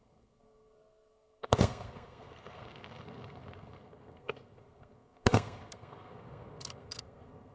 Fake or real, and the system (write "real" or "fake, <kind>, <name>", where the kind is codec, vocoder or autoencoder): fake, codec, SNAC